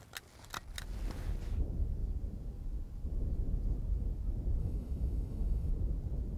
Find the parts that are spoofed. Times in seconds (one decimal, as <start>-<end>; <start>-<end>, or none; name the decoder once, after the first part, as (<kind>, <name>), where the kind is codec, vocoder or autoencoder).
4.6-5.7 (autoencoder, DAC-VAE)